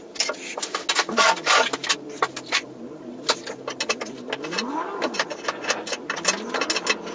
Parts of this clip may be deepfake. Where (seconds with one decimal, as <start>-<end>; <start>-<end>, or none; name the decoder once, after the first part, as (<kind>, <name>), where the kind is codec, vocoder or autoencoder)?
none